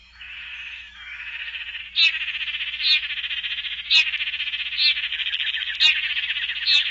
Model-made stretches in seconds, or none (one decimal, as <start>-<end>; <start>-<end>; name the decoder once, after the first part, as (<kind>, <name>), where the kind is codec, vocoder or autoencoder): 0.0-1.8 (autoencoder, DAC-VAE); 5.1-5.8